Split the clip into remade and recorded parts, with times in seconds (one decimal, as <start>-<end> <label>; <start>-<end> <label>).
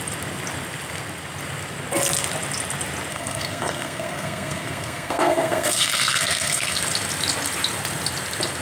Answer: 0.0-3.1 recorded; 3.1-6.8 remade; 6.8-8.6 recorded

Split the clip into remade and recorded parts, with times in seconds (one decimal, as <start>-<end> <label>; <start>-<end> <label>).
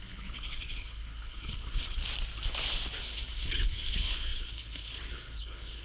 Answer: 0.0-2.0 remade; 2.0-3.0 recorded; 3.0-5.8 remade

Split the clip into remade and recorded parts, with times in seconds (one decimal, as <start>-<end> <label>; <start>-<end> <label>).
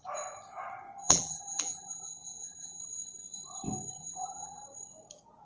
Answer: 0.0-1.0 recorded; 1.0-2.8 remade; 2.8-4.0 recorded; 4.0-4.6 remade; 4.6-5.5 recorded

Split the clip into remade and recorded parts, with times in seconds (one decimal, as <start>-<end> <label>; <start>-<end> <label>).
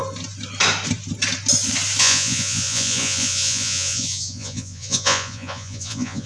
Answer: 0.0-2.0 recorded; 2.0-6.3 remade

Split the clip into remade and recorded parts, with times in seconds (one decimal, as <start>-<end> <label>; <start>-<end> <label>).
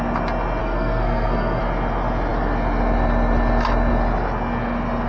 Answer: 0.0-0.6 recorded; 0.6-1.6 remade; 1.6-5.1 recorded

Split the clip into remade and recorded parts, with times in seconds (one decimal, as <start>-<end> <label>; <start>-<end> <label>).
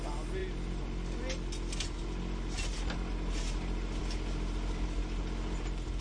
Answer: 0.0-6.0 recorded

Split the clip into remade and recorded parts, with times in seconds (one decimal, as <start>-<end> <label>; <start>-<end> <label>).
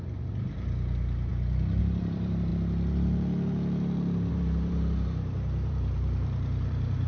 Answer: 0.0-1.3 remade; 1.3-1.8 recorded; 1.8-2.5 remade; 2.5-4.3 recorded; 4.3-7.1 remade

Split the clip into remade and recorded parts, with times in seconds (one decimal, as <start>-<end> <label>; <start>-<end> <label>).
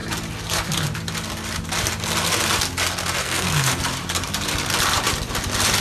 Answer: 0.0-3.2 recorded; 3.2-3.8 remade; 3.8-5.8 recorded